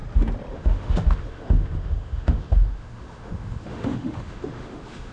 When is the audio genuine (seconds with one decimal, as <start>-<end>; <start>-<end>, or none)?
0.0-0.5